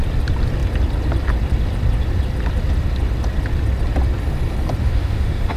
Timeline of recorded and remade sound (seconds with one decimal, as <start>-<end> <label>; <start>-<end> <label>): 0.0-4.8 recorded; 4.8-5.6 remade